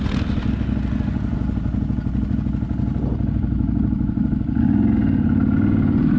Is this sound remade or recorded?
recorded